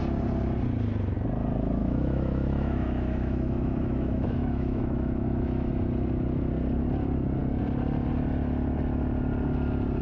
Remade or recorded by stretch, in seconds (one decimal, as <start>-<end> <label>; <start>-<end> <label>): 0.0-1.8 recorded; 1.8-5.7 remade; 5.7-10.0 recorded